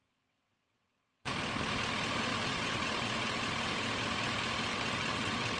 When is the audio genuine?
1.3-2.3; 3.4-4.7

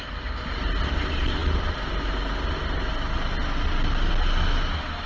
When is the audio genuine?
0.0-5.1

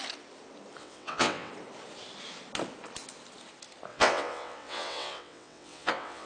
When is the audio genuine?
0.0-0.8; 1.5-3.9

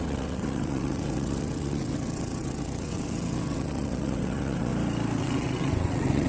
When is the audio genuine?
4.7-5.2